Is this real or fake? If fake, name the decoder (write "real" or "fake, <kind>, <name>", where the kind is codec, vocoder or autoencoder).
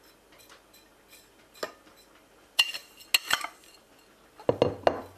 real